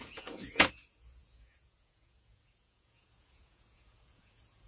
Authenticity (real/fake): fake